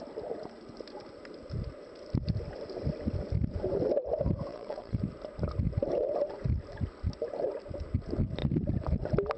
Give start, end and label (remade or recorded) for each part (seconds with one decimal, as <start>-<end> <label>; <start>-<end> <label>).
0.0-4.5 recorded; 4.5-5.0 remade; 5.0-9.4 recorded